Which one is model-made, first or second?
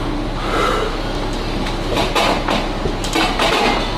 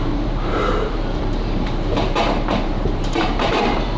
second